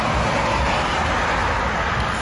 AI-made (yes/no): no